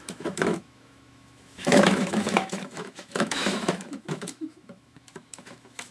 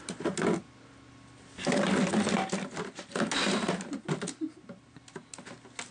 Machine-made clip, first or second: first